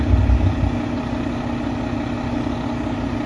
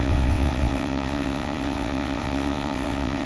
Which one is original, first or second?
first